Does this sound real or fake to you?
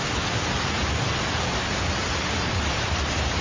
real